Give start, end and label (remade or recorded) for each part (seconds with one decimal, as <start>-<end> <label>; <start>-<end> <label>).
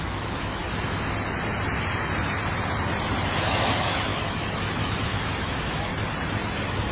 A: 0.0-0.6 remade; 0.6-3.3 recorded; 3.3-5.9 remade; 5.9-6.9 recorded